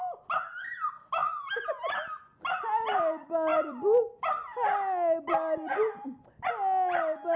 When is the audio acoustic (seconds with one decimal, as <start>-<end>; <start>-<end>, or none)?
0.0-1.2; 1.7-7.4